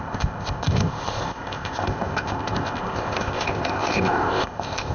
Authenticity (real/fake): fake